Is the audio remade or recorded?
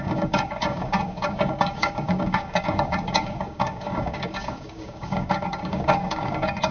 remade